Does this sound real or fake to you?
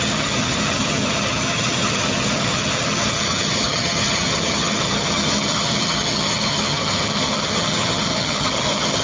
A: fake